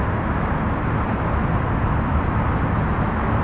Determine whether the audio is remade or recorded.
recorded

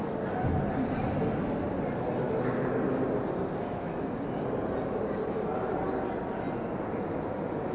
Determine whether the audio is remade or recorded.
recorded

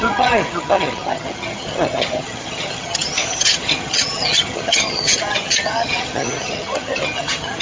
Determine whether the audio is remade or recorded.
remade